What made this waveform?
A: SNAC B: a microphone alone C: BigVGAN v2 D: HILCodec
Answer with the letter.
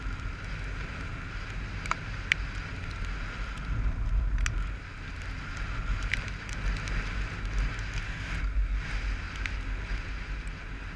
B